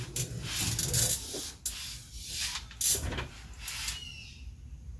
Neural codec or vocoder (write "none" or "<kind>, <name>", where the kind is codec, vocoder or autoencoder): none